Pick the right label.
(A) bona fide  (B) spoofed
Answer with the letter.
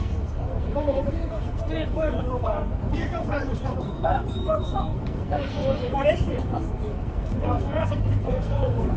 B